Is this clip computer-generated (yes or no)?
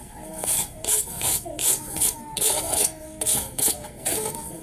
yes